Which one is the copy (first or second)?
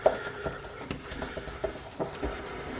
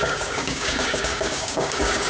second